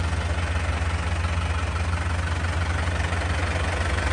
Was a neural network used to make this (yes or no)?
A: no